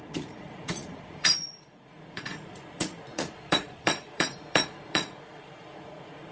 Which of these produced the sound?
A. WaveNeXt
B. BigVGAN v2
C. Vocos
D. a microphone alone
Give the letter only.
C